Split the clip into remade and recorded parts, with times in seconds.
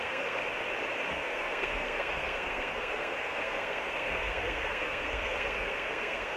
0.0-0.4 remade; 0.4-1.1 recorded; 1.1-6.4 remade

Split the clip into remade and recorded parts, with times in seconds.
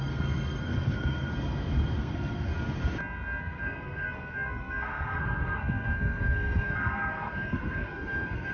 0.0-1.3 remade; 1.3-2.0 recorded; 2.0-2.5 remade; 2.5-3.4 recorded; 3.4-8.5 remade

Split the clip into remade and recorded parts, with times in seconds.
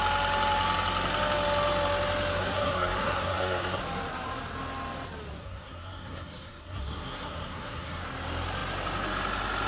0.0-2.4 recorded; 2.4-3.8 remade; 3.8-5.4 recorded; 5.4-8.0 remade; 8.0-9.7 recorded